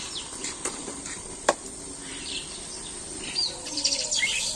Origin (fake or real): fake